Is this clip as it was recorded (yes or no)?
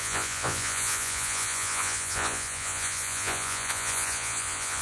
no